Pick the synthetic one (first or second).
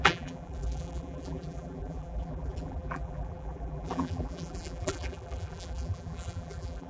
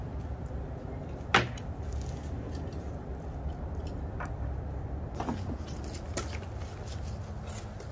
first